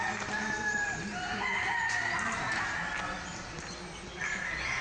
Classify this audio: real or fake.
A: real